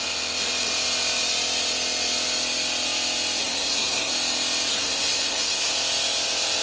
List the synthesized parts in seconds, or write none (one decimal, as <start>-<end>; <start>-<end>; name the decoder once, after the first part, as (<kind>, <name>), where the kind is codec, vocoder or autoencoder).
3.4-4.1 (codec, SNAC); 4.7-5.7